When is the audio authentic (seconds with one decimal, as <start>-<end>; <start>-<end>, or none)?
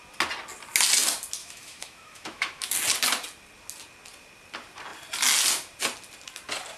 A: 0.0-1.4; 2.7-6.8